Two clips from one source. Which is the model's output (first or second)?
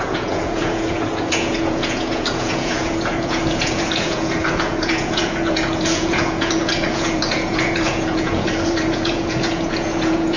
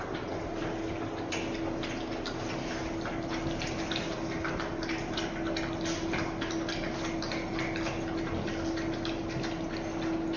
first